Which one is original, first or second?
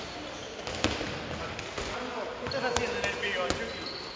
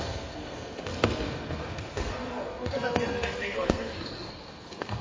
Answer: first